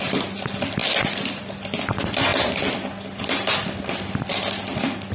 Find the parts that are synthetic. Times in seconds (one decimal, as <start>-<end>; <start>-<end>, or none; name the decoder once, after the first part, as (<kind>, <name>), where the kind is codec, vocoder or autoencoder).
none